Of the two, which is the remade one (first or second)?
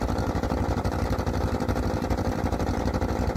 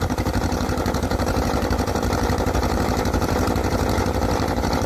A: second